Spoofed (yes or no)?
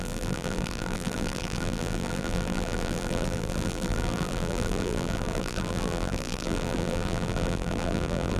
yes